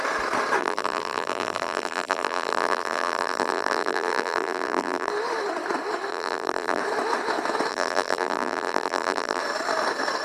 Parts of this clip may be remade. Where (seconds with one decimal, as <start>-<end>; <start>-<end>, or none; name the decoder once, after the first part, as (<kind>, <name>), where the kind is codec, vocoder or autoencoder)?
0.6-5.1 (vocoder, BigVGAN v2); 6.1-6.8; 7.7-9.4